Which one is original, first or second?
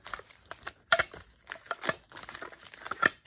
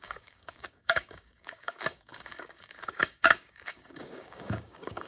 first